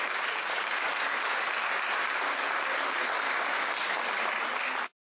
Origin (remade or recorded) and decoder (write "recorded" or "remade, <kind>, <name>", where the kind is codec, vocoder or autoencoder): recorded